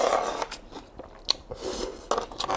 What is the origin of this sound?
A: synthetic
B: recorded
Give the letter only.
B